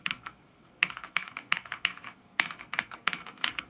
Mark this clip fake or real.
fake